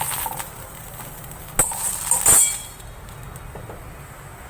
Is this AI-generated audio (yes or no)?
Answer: no